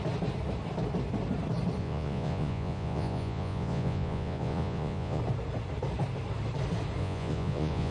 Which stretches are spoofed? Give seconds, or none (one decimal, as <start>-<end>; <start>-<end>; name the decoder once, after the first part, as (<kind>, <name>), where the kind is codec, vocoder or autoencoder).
1.8-5.2 (vocoder, Vocos); 7.0-7.9